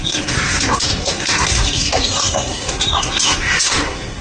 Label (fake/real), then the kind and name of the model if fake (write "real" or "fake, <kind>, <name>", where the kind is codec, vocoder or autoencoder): fake, codec, SNAC